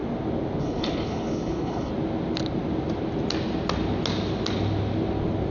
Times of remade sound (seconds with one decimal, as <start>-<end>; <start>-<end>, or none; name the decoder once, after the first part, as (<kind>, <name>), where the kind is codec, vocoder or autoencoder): 0.6-1.9 (codec, HILCodec)